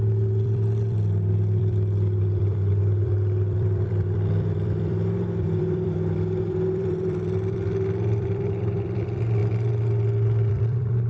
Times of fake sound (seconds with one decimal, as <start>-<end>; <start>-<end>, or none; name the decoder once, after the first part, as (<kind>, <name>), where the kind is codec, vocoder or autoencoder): 0.0-9.4 (vocoder, BigVGAN v2); 10.5-11.1